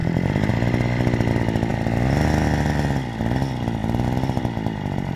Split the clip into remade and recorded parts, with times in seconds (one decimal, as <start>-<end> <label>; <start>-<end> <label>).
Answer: 0.0-5.2 recorded